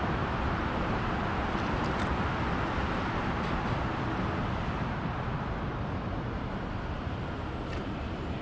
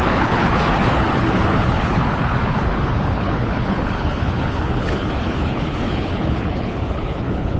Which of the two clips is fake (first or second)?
second